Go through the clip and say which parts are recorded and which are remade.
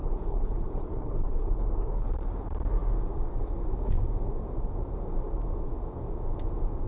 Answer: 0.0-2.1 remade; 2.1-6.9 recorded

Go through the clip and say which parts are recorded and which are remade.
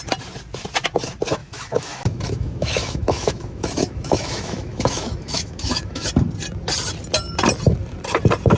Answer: 0.0-1.4 recorded; 1.4-6.1 remade; 6.1-8.6 recorded